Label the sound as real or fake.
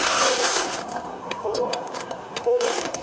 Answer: fake